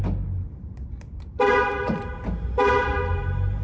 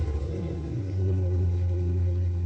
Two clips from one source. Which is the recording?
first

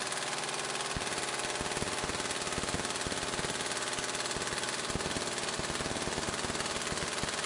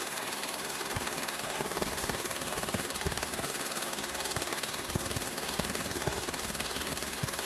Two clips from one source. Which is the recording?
first